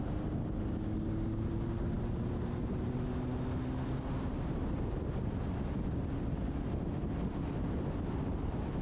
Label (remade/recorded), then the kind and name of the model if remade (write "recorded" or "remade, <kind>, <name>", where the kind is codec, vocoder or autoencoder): recorded